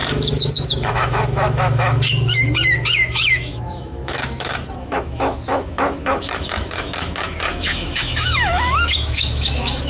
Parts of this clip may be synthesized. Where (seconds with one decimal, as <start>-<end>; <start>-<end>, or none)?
0.0-9.9

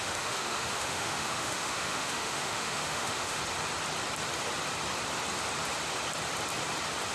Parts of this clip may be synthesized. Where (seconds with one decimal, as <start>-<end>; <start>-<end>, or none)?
0.0-3.4